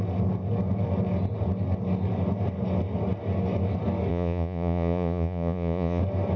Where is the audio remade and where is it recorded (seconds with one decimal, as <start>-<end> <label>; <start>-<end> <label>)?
0.0-4.1 recorded; 4.1-6.0 remade; 6.0-6.4 recorded